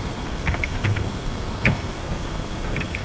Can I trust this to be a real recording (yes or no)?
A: no